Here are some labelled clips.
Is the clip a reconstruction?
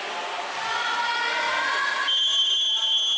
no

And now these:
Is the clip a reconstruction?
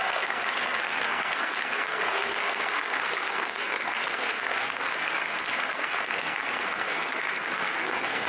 yes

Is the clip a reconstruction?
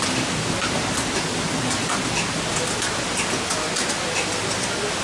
no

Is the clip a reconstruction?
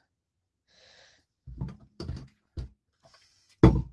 no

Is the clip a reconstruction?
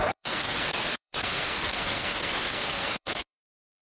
yes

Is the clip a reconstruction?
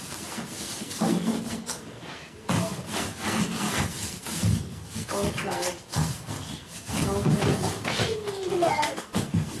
yes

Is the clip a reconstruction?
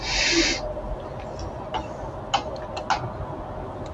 no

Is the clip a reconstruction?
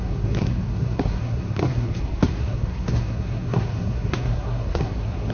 yes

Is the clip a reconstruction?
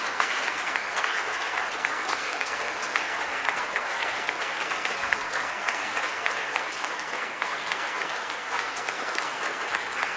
yes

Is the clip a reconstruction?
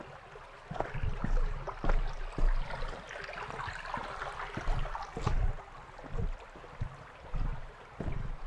no